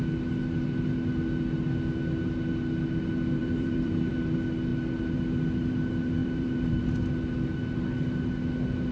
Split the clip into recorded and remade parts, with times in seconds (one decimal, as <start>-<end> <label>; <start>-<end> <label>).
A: 0.0-3.4 recorded; 3.4-4.1 remade; 4.1-6.2 recorded; 6.2-6.8 remade; 6.8-8.9 recorded